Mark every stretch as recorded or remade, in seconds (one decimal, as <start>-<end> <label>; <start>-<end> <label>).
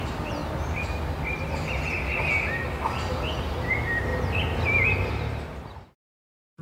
0.0-0.4 remade; 0.4-2.8 recorded; 2.8-4.1 remade; 4.1-5.1 recorded; 5.1-6.6 remade